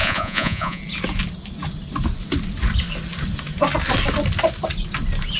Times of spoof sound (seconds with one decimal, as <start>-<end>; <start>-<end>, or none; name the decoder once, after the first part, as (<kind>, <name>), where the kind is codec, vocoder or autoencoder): 0.0-0.8 (vocoder, Vocos)